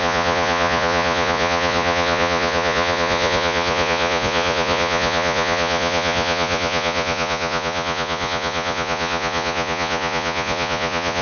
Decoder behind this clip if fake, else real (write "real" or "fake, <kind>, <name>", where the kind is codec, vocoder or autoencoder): fake, vocoder, Vocos